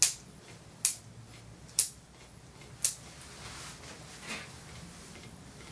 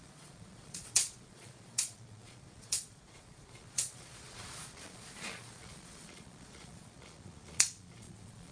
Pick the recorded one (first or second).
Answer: first